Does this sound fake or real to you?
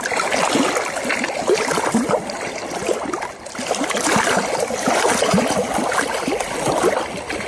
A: fake